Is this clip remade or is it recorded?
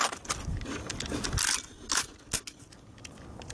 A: recorded